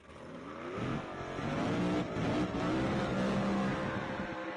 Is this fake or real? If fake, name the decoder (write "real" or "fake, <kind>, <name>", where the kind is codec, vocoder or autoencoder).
real